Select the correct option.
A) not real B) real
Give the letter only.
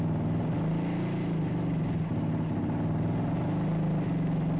B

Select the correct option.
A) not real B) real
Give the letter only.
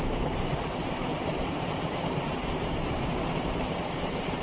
A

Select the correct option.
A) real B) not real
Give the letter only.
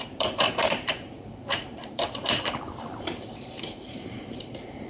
B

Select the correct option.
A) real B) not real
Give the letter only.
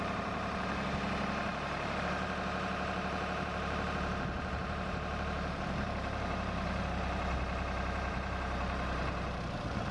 B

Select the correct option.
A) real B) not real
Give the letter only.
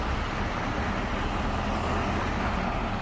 A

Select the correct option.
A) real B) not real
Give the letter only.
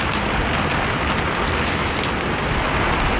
B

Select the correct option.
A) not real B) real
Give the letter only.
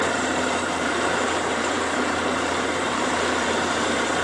A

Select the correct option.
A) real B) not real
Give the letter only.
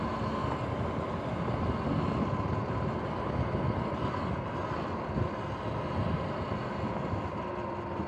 A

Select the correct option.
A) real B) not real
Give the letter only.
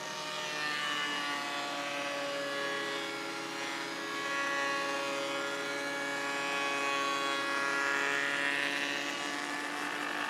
A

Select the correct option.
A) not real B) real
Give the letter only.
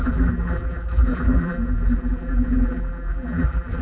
A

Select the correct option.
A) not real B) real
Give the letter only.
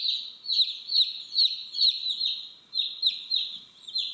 B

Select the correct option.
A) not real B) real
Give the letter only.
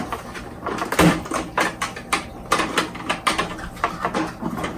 B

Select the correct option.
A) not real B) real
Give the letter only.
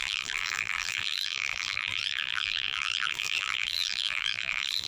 A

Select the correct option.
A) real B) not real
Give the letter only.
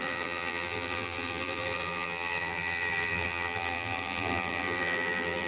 B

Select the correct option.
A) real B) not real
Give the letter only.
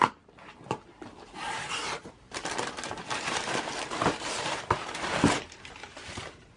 B